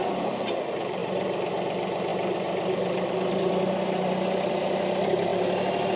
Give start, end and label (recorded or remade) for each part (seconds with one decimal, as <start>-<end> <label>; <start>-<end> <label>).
0.0-6.0 recorded